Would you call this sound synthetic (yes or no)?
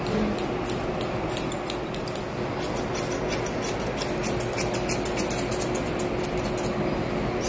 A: no